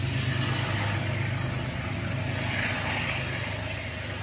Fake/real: real